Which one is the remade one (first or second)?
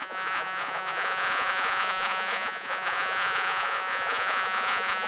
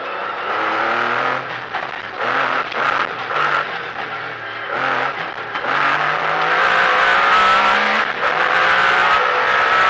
first